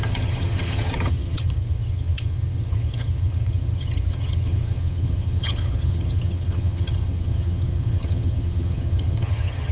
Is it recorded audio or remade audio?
remade